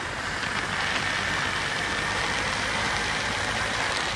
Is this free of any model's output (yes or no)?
no